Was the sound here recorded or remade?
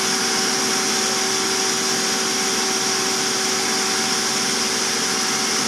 recorded